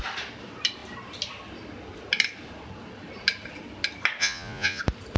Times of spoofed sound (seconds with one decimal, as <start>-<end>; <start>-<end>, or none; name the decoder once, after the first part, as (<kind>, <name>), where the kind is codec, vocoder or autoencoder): 4.2-4.8 (vocoder, Vocos)